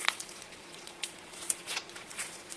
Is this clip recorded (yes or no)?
no